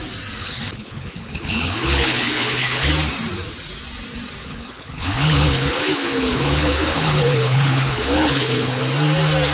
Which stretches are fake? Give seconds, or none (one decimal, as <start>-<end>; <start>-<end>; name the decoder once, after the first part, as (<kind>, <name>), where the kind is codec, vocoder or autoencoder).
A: 0.4-2.9 (codec, HILCodec); 4.4-8.8